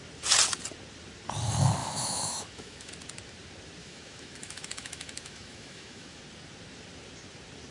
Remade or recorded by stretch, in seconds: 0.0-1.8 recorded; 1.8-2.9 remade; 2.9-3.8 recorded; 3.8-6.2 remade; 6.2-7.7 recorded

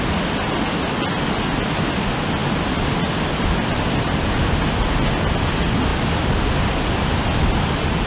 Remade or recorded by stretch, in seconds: 0.0-8.1 recorded

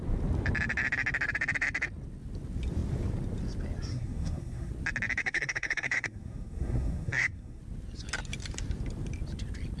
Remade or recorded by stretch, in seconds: 0.0-3.9 recorded; 3.9-4.7 remade; 4.7-5.2 recorded; 5.2-7.6 remade; 7.6-9.8 recorded

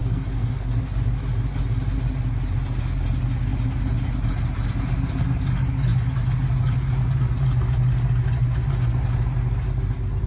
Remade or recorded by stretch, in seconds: 0.0-0.8 remade; 0.8-10.3 recorded

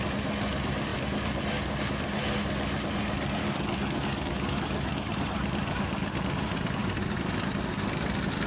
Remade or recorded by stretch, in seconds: 0.0-3.4 recorded; 3.4-5.1 remade; 5.1-8.5 recorded

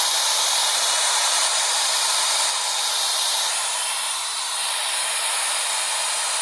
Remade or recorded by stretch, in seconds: 0.0-0.6 recorded; 0.6-1.8 remade; 1.8-2.7 recorded; 2.7-4.8 remade; 4.8-6.4 recorded